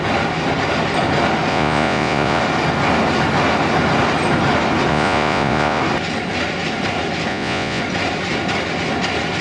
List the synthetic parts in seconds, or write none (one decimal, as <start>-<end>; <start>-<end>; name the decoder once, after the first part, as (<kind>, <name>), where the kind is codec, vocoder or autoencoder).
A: 1.5-2.4 (vocoder, Vocos); 4.9-5.8; 7.3-7.8